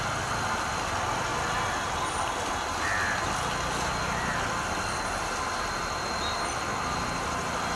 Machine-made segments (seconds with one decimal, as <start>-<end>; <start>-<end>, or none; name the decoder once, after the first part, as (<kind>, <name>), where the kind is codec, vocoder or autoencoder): none